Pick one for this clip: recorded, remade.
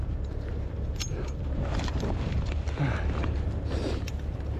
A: remade